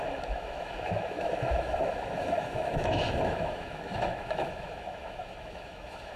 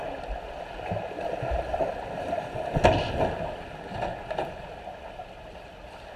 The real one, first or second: second